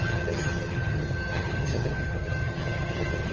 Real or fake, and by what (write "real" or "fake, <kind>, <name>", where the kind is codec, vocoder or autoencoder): fake, vocoder, HiFi-GAN